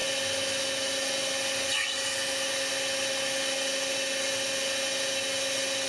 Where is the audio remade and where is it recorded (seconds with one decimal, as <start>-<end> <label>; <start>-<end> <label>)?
0.0-5.9 recorded

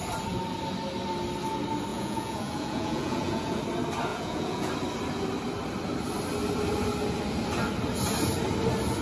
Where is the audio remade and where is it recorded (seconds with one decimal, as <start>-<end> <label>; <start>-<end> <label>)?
0.0-1.9 recorded; 1.9-3.6 remade; 3.6-4.1 recorded; 4.1-4.7 remade; 4.7-9.0 recorded

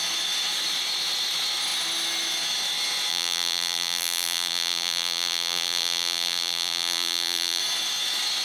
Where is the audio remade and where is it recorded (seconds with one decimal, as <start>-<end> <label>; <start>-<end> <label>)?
0.0-3.1 recorded; 3.1-7.6 remade; 7.6-8.4 recorded

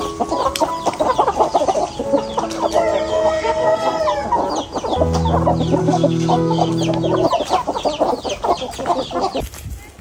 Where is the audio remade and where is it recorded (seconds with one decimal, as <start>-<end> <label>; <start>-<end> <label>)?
0.0-3.1 recorded; 3.1-4.0 remade; 4.0-5.8 recorded; 5.8-6.7 remade; 6.7-10.0 recorded

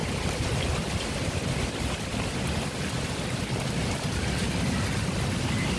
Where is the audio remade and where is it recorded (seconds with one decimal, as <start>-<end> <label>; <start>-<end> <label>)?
0.0-5.8 recorded

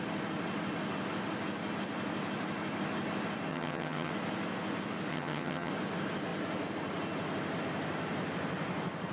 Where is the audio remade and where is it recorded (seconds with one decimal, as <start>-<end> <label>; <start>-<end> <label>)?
0.0-3.5 recorded; 3.5-4.1 remade; 4.1-5.1 recorded; 5.1-5.7 remade; 5.7-9.1 recorded